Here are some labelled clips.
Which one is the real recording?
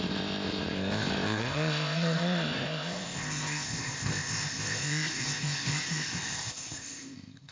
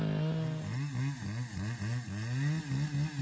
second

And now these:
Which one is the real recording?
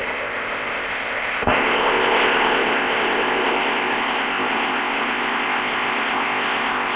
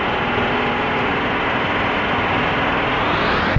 second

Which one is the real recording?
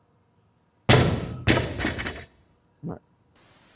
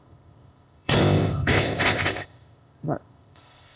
first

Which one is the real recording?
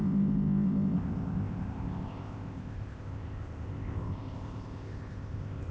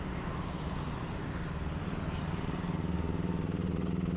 second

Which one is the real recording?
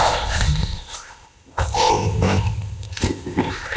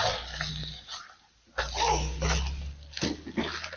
second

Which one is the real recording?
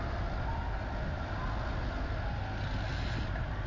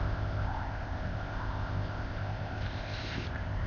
first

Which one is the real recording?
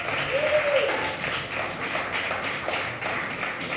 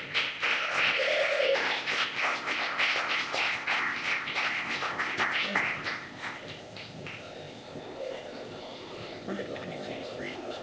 first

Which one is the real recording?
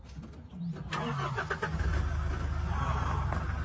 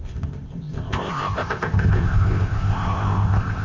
first